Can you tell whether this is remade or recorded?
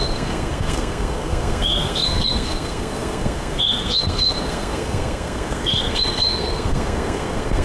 remade